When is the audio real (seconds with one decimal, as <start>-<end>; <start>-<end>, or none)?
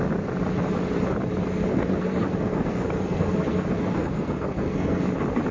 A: 0.0-1.7; 5.0-5.5